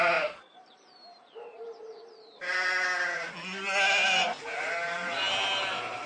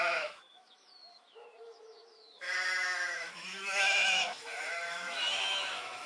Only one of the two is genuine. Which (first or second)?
first